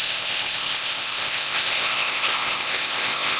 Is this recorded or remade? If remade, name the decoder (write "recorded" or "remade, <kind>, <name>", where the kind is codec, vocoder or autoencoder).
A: remade, codec, ZipCodec